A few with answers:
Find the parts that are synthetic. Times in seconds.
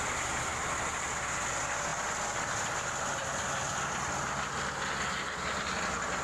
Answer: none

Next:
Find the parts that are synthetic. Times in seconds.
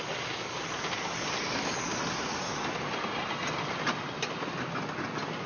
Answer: none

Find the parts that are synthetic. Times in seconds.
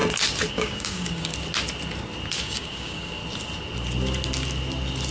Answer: 0.5-1.3 (codec, DAC); 2.4-3.2